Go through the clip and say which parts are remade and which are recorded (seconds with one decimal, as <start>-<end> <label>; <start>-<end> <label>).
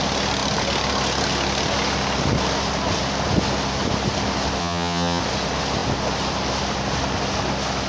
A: 0.0-4.6 recorded; 4.6-5.2 remade; 5.2-7.9 recorded